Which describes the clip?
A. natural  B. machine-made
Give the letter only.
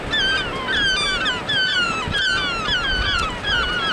A